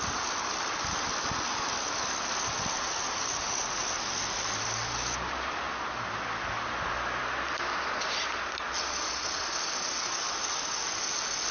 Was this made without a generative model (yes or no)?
yes